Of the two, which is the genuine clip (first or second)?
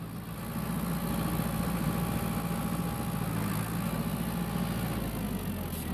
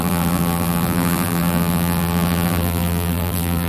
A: first